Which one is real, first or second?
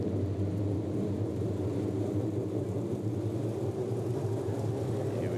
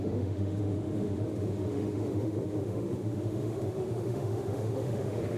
first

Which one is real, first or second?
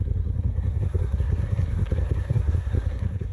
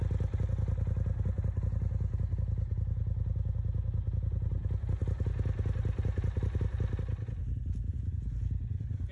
second